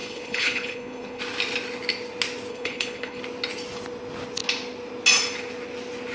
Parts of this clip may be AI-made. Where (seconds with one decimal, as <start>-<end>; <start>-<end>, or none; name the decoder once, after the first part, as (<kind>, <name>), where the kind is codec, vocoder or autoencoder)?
0.0-1.2 (codec, HILCodec); 2.5-3.2